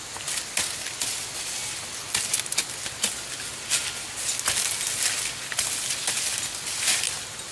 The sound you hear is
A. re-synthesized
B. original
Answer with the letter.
B